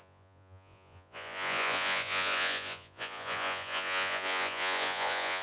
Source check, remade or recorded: remade